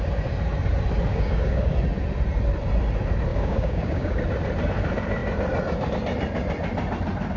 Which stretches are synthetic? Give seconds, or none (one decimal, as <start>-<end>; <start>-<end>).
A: 1.1-1.7; 3.3-4.2